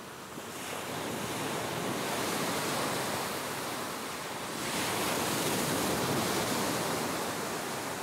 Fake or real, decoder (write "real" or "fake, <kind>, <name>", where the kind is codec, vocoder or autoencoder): real